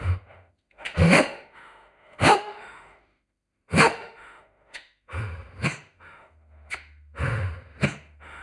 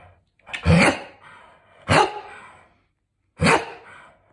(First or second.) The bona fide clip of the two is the second